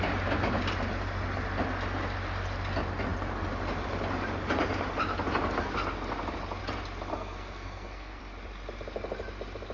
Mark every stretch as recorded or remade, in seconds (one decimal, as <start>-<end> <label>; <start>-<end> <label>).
0.0-7.1 recorded; 7.1-8.2 remade; 8.2-9.7 recorded